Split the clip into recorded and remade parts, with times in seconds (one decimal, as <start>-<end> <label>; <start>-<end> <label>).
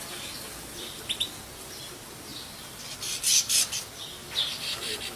0.0-5.2 recorded